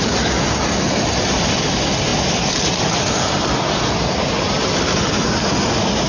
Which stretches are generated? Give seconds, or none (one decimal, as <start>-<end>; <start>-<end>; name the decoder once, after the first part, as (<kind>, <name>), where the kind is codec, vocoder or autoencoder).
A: none